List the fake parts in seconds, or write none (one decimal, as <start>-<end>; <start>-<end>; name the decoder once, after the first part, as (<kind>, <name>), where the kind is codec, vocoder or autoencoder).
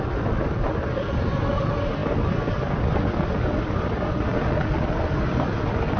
none